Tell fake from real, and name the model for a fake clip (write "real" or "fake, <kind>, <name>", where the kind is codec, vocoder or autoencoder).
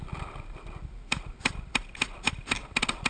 fake, vocoder, BigVGAN v2